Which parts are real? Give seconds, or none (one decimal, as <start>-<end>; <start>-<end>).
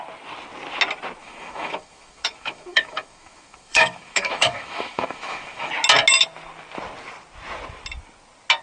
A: 0.0-1.2; 5.7-8.6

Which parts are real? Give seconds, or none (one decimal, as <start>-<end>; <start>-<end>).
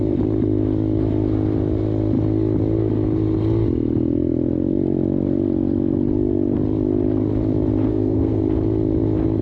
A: 0.0-7.9; 8.4-9.4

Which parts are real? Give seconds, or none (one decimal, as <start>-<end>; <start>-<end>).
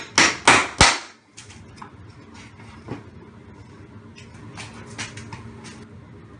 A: 0.0-6.4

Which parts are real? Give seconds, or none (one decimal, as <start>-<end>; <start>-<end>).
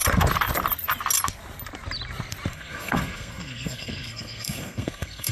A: 0.0-2.5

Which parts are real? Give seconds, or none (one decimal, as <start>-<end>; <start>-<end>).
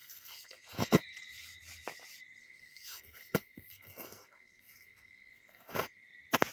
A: 1.0-2.4; 6.0-6.5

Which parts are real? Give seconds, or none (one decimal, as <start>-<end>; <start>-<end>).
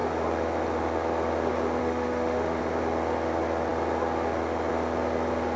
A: 0.0-1.8; 2.6-5.6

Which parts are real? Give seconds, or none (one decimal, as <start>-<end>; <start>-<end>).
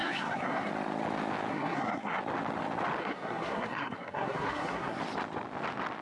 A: 0.7-1.5; 2.2-3.0; 5.0-6.0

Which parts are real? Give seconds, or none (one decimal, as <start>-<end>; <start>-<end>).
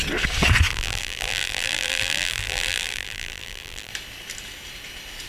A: 0.0-0.7; 3.9-5.3